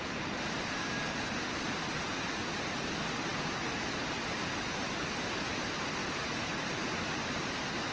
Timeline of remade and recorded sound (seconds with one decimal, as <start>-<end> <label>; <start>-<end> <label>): 0.0-7.9 recorded